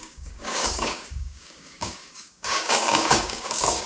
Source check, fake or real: fake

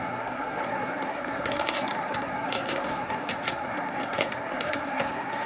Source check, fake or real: fake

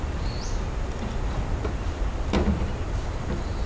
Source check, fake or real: real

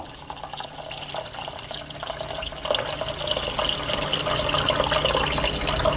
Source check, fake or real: real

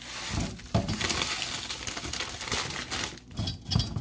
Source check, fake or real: real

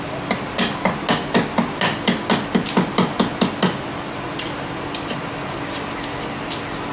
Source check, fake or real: real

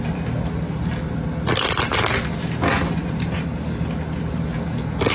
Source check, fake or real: real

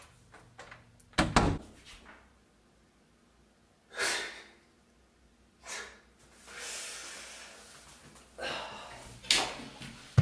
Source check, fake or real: real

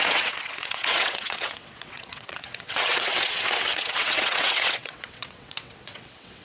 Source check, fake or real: fake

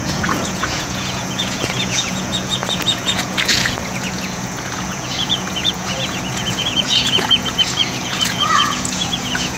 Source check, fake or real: fake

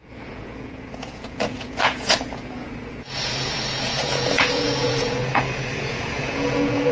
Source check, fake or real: fake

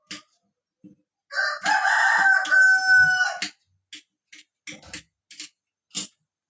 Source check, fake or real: real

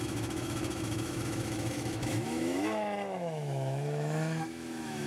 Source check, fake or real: fake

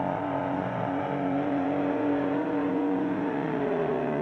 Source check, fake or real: fake